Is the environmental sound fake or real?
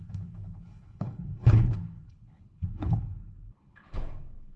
fake